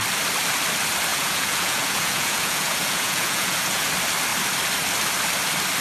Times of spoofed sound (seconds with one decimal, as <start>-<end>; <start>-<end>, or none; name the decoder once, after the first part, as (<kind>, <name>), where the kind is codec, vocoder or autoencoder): 1.1-3.9 (vocoder, Vocos)